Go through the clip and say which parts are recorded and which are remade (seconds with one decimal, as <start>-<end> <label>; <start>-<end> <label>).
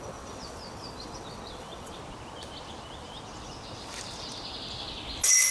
0.0-2.0 remade; 2.0-5.5 recorded